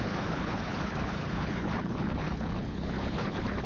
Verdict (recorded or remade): remade